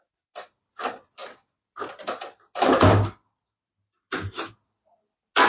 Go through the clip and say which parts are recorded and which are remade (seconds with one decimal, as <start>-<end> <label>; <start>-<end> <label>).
0.0-5.5 recorded

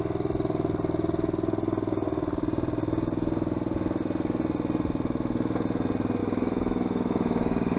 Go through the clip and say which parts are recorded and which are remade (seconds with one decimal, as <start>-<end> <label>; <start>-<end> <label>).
0.0-6.2 recorded; 6.2-7.8 remade

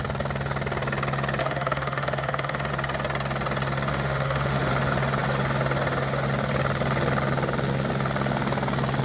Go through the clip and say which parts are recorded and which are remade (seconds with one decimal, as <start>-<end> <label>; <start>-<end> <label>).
0.0-1.4 recorded; 1.4-2.7 remade; 2.7-3.9 recorded; 3.9-4.7 remade; 4.7-9.0 recorded

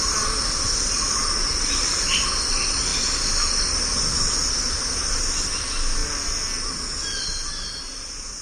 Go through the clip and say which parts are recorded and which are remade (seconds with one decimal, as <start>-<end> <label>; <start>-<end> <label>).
0.0-8.4 recorded

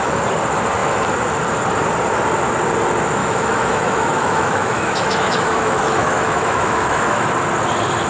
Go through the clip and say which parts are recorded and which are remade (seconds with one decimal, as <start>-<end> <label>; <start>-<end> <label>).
0.0-3.2 recorded; 3.2-7.3 remade; 7.3-8.1 recorded

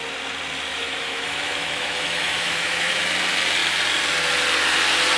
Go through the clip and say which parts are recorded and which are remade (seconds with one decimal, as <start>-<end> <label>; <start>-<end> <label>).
0.0-0.7 recorded; 0.7-3.0 remade; 3.0-5.2 recorded

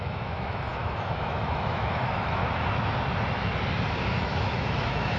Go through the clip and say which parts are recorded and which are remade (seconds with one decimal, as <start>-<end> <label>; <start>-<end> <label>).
0.0-2.4 remade; 2.4-4.2 recorded; 4.2-5.2 remade